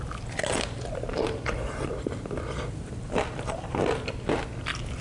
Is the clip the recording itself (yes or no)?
no